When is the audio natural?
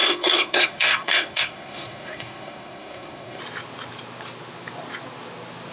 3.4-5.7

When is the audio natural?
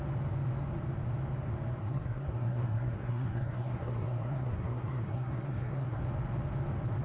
0.0-1.8; 6.0-7.0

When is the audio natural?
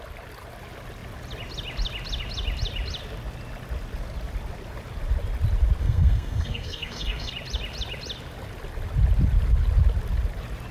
0.0-5.8; 7.3-10.7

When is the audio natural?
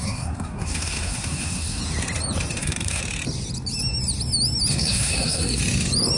1.8-2.6; 3.0-4.7; 5.6-6.2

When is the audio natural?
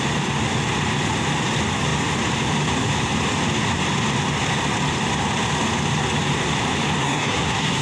0.0-7.0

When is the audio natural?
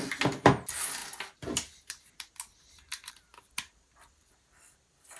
0.0-5.2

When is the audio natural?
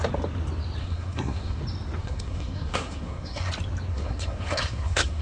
0.0-0.8; 1.6-2.0; 3.5-3.9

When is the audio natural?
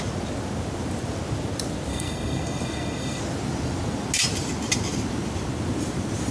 0.0-1.9; 3.2-6.3